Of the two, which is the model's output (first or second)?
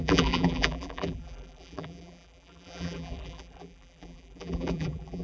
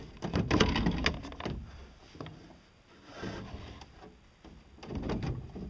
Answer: first